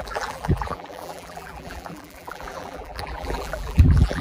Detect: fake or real fake